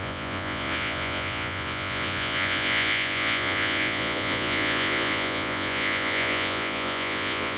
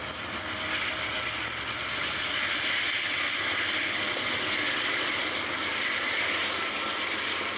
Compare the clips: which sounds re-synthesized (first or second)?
first